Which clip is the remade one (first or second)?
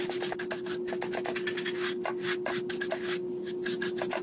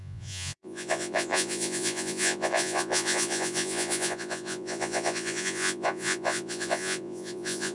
second